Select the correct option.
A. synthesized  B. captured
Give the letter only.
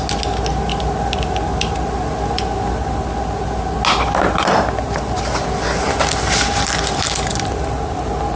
B